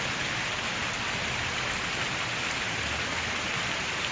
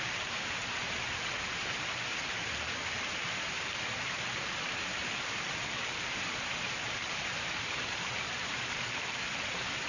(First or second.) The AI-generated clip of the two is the second